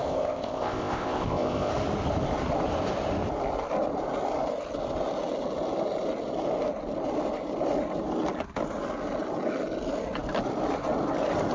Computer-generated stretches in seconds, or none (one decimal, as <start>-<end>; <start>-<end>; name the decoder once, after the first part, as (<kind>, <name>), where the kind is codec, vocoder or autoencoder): 0.0-1.7 (codec, ZipCodec)